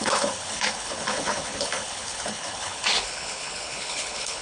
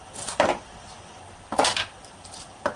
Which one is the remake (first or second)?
first